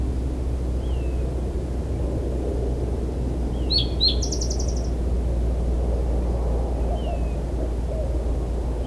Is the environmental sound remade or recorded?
recorded